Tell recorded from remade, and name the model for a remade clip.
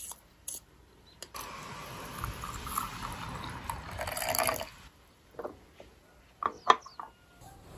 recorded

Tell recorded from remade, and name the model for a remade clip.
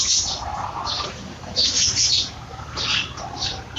recorded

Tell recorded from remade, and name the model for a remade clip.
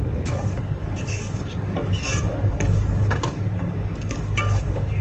remade, codec, DAC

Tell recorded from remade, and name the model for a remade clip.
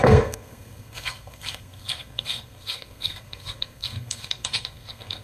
remade, codec, SNAC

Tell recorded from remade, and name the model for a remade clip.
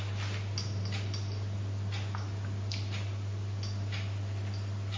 recorded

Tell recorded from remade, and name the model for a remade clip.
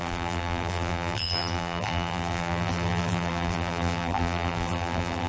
remade, vocoder, BigVGAN v2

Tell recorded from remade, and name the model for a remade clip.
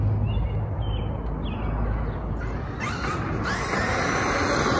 recorded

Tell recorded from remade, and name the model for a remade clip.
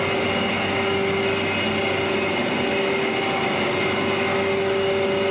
recorded